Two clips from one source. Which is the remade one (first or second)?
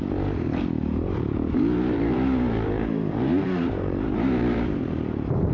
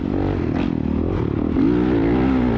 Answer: first